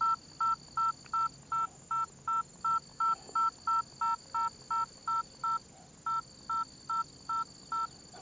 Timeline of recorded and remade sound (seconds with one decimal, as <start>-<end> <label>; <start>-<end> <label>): 0.0-2.9 recorded; 2.9-3.5 remade; 3.5-8.2 recorded